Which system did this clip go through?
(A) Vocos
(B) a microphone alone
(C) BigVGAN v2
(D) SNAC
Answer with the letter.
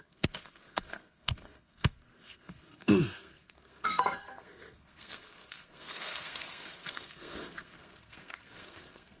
D